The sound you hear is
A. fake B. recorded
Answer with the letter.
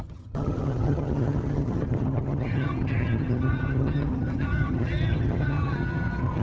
A